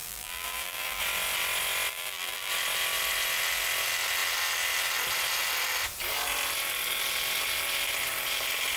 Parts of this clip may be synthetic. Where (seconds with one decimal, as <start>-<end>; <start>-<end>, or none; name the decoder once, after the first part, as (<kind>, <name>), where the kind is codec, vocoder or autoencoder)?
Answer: 0.0-1.0 (vocoder, BigVGAN v2); 1.9-2.5